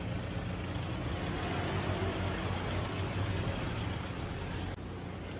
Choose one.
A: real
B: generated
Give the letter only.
A